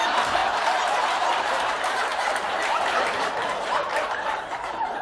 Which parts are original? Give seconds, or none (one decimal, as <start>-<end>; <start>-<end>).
none